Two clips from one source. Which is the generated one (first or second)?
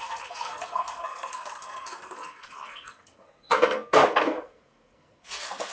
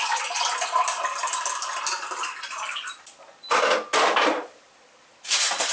first